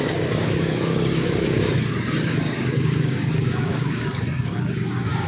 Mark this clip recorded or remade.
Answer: remade